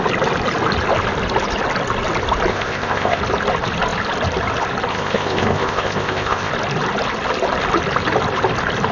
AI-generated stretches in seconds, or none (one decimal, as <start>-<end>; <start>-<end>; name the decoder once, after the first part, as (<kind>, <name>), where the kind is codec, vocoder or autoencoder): 2.5-3.2 (codec, ZipCodec); 4.9-6.5